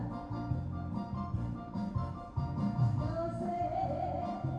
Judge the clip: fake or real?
real